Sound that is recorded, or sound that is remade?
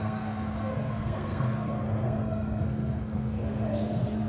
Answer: remade